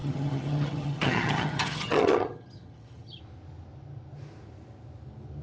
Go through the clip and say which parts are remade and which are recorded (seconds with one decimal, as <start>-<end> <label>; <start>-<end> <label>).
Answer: 0.0-3.2 remade; 3.2-5.4 recorded